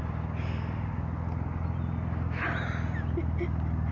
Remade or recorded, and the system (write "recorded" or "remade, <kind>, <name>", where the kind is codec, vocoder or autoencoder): recorded